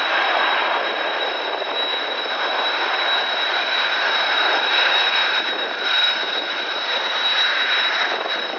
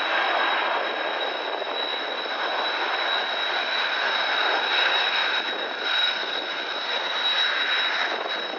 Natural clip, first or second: second